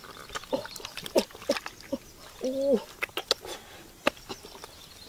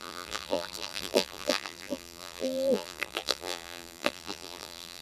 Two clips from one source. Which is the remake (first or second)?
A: second